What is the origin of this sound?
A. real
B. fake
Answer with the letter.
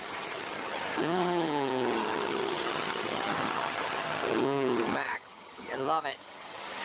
B